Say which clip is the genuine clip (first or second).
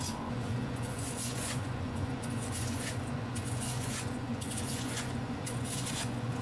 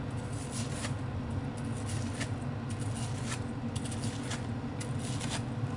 second